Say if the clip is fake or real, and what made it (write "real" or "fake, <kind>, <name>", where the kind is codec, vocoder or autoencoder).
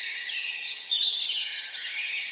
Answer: fake, vocoder, HiFi-GAN